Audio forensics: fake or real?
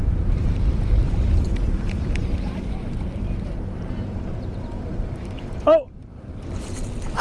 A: fake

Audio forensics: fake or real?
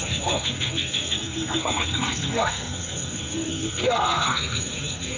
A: fake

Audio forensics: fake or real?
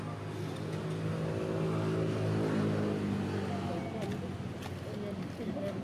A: real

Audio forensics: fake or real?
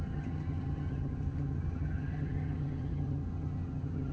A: fake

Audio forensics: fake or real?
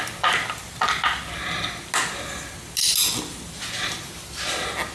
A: real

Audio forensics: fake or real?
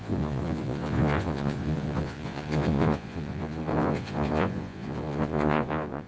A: fake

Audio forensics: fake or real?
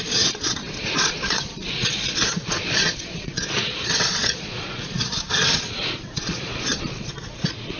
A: fake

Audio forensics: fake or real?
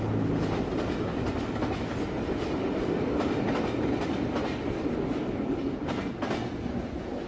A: real